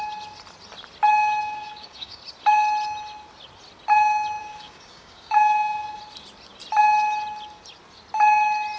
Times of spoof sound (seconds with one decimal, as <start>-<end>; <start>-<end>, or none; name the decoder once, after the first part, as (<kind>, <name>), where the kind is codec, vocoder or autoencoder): 1.4-2.2 (codec, DAC); 4.4-6.0